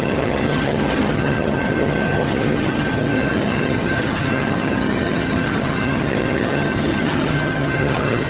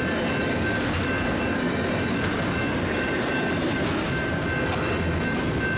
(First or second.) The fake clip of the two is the first